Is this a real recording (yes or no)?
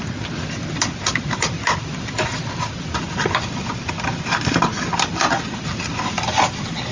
yes